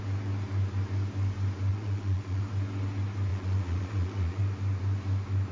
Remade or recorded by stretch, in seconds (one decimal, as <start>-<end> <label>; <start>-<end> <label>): 0.0-1.7 recorded; 1.7-2.4 remade; 2.4-3.3 recorded; 3.3-4.4 remade; 4.4-5.5 recorded